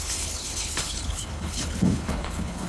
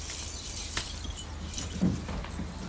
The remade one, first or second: first